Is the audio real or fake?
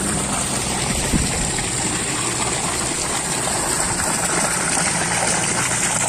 fake